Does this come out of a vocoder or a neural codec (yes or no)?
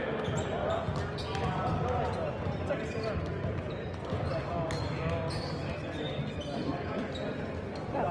no